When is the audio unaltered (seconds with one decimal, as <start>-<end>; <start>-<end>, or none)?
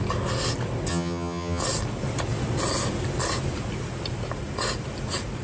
0.0-0.9; 1.6-5.4